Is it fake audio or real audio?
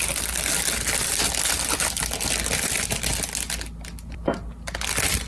real